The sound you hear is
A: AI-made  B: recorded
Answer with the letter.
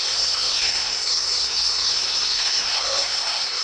A